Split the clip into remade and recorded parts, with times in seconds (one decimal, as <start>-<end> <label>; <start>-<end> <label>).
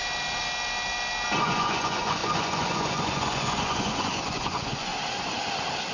0.0-1.4 recorded; 1.4-4.9 remade; 4.9-5.9 recorded